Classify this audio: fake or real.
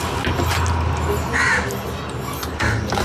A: real